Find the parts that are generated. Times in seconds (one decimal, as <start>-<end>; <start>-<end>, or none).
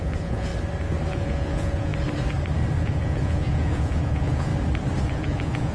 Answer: 0.0-0.5; 1.1-1.9; 2.8-4.5; 5.0-5.7